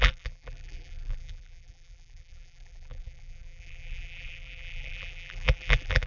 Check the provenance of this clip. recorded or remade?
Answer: remade